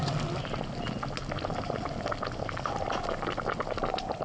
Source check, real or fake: real